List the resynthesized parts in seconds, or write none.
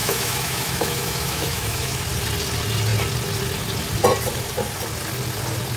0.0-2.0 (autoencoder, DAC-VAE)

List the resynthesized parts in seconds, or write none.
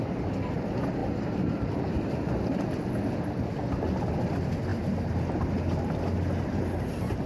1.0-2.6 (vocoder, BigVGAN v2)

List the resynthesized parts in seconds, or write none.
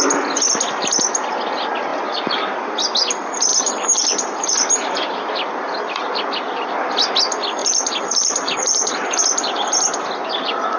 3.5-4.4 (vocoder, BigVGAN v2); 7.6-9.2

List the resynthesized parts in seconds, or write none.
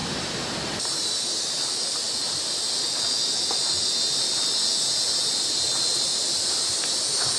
0.0-1.4 (vocoder, BigVGAN v2); 6.1-7.0